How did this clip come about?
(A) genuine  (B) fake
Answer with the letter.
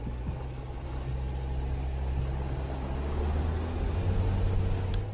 A